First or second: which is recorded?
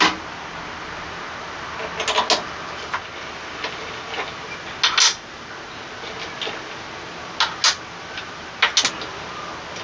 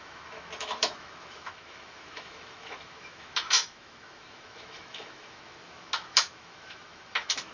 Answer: first